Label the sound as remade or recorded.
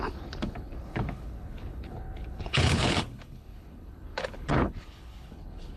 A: remade